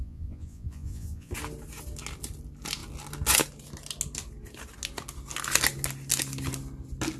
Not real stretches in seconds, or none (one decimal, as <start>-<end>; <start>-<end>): 0.0-1.3